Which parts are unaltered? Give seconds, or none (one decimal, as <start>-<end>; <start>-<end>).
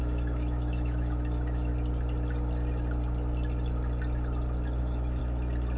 1.7-4.8; 5.2-5.8